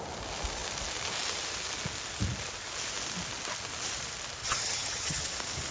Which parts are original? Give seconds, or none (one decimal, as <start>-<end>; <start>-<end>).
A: 0.0-4.4; 5.3-5.7